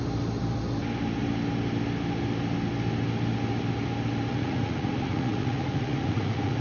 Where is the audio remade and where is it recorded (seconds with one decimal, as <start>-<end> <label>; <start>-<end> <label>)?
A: 0.0-4.3 recorded; 4.3-6.6 remade